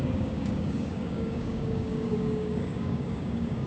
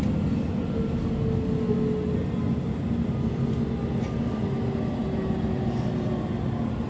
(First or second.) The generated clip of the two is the first